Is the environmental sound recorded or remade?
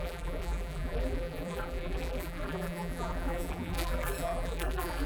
remade